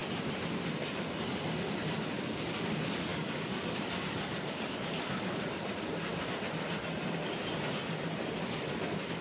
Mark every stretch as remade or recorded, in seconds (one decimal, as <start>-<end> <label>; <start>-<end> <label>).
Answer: 0.0-3.1 recorded; 3.1-4.9 remade; 4.9-9.2 recorded